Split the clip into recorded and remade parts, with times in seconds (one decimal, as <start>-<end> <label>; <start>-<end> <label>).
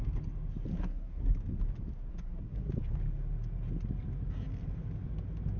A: 0.0-0.7 recorded; 0.7-1.3 remade; 1.3-2.1 recorded; 2.1-2.7 remade; 2.7-5.6 recorded